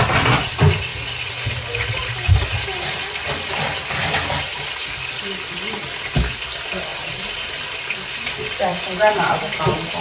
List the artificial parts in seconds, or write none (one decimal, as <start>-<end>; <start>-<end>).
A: 0.0-0.9; 4.8-10.0